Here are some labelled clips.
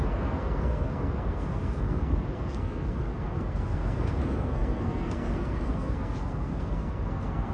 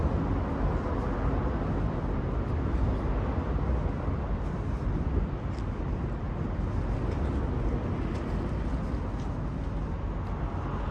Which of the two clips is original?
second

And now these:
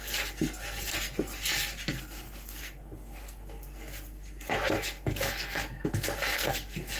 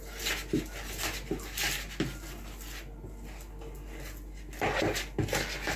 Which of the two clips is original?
second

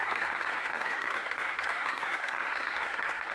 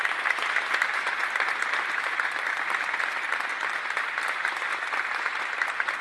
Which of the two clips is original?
second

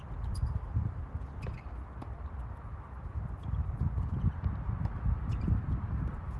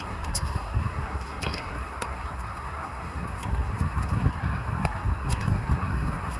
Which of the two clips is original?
first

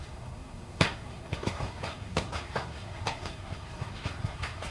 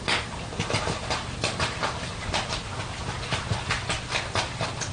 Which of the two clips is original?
second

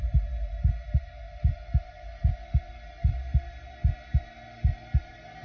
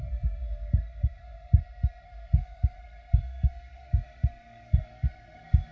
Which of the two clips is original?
first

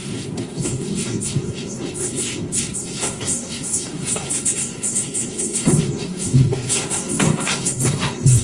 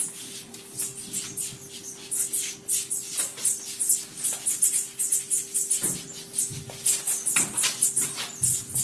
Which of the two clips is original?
second